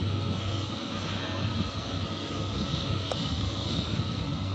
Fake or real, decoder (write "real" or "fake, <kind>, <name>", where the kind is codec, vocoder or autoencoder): fake, codec, SNAC